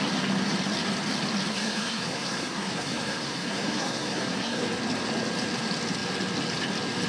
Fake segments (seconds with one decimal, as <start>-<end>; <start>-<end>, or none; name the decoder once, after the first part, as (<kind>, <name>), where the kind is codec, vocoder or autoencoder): 1.5-4.6 (codec, SNAC)